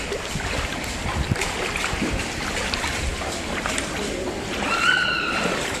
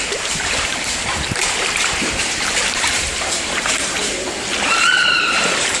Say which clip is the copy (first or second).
second